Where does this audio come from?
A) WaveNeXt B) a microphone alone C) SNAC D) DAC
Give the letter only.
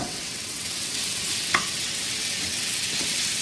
A